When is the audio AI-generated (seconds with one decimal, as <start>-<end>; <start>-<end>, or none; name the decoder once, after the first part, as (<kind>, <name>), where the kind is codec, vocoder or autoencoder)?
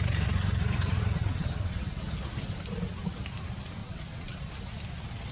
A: 1.2-2.0 (vocoder, WaveNeXt); 3.8-4.4